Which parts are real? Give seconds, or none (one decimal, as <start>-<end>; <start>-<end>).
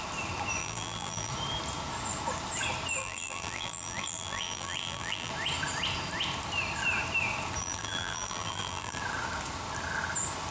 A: 0.0-0.6; 1.3-3.0; 5.3-7.6; 9.0-10.5